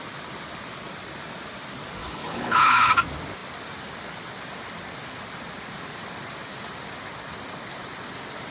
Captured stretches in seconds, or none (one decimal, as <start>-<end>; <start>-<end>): 0.0-2.0; 2.9-8.5